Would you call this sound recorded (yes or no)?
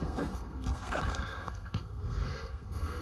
no